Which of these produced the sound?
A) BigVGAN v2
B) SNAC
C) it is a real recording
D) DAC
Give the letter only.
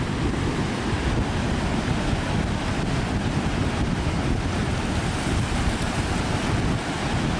C